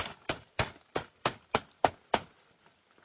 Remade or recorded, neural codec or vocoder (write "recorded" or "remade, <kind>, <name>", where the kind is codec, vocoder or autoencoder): recorded